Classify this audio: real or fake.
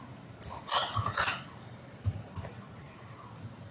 real